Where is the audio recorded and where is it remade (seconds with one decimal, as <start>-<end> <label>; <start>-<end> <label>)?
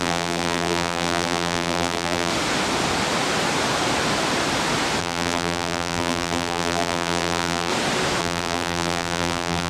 0.0-2.3 remade; 2.3-5.0 recorded; 5.0-7.7 remade; 7.7-8.2 recorded; 8.2-9.7 remade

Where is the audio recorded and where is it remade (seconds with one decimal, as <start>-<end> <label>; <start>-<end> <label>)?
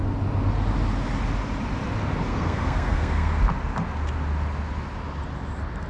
0.0-2.3 recorded; 2.3-3.4 remade; 3.4-5.9 recorded